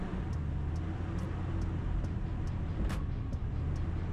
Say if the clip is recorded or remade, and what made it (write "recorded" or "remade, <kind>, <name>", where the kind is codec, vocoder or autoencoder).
recorded